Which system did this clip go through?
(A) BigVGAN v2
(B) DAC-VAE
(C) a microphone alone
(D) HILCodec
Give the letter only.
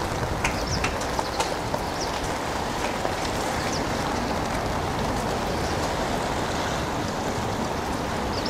C